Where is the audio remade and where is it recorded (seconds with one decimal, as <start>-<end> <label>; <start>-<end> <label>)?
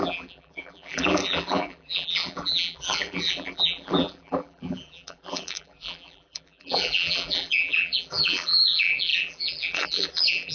0.0-10.5 remade